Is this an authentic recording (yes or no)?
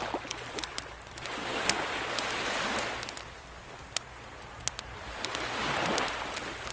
yes